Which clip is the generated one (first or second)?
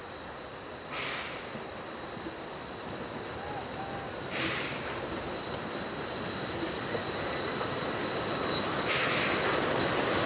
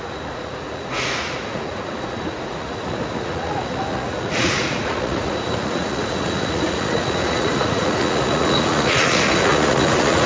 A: second